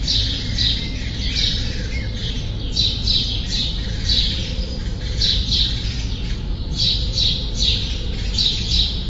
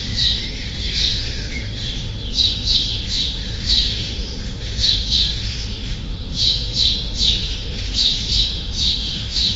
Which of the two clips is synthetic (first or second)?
second